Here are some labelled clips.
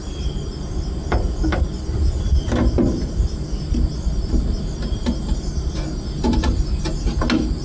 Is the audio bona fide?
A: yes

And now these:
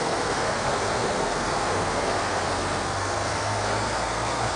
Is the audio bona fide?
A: no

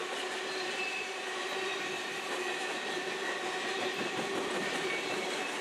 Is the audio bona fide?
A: no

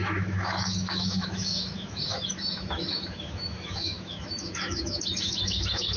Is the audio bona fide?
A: no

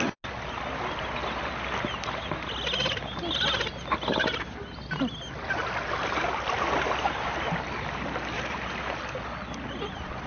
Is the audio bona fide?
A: yes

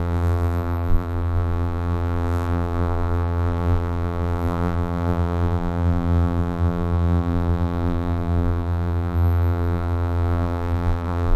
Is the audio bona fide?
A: no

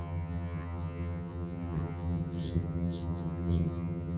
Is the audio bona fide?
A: no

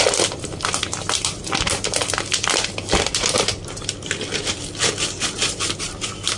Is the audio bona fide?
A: no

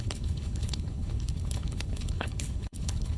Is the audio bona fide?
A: no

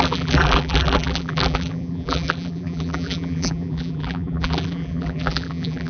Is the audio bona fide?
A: no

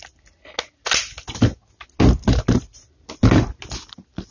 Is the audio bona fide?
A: yes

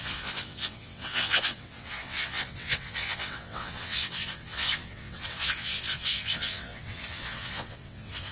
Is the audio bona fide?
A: no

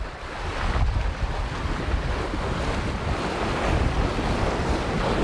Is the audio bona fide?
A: yes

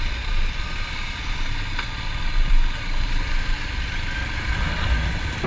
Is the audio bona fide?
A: yes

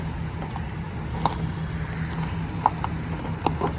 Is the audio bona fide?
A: yes